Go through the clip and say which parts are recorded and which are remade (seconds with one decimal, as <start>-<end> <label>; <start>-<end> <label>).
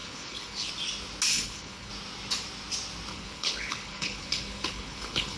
0.0-0.7 remade; 0.7-1.3 recorded; 1.3-1.9 remade; 1.9-3.1 recorded; 3.1-5.4 remade